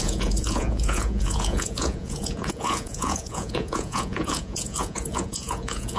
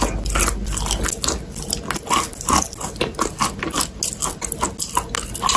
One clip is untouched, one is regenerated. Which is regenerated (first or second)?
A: first